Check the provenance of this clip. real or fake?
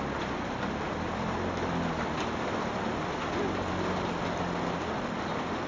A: real